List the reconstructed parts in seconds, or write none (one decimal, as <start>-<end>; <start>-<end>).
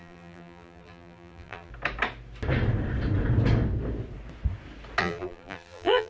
0.0-1.7; 5.0-6.1